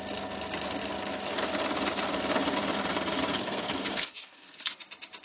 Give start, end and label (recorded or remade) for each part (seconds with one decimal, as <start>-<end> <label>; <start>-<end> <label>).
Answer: 0.0-3.4 recorded; 3.4-4.7 remade; 4.7-5.2 recorded